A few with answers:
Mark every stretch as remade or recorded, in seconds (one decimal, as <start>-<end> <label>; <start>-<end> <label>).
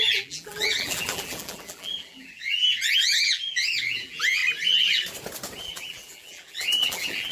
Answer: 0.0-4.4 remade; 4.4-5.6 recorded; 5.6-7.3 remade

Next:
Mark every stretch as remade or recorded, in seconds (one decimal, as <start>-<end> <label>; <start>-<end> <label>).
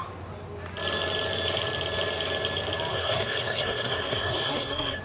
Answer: 0.0-2.9 recorded; 2.9-5.0 remade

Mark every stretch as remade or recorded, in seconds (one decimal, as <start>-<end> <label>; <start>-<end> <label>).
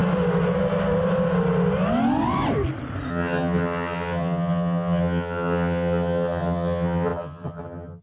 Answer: 0.0-3.1 recorded; 3.1-8.0 remade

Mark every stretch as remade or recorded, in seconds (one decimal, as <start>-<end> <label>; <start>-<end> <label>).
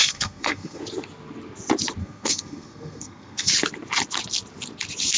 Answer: 0.0-0.8 remade; 0.8-2.0 recorded; 2.0-3.5 remade; 3.5-5.2 recorded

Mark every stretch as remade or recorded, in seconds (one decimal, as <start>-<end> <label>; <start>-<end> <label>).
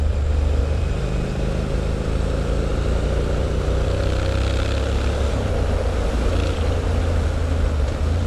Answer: 0.0-1.0 remade; 1.0-2.7 recorded; 2.7-4.0 remade; 4.0-8.3 recorded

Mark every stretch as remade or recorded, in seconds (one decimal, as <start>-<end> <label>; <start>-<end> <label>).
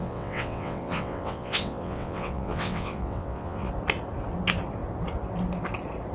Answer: 0.0-3.7 remade; 3.7-6.1 recorded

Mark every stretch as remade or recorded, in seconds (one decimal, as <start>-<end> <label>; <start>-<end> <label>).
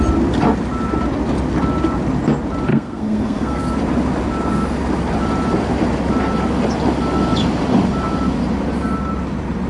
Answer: 0.0-2.7 recorded; 2.7-3.6 remade; 3.6-9.7 recorded